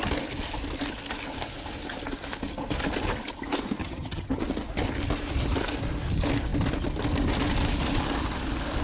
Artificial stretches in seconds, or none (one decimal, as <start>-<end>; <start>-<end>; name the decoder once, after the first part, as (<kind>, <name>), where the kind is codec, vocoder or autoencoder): 3.8-4.4 (vocoder, HiFi-GAN)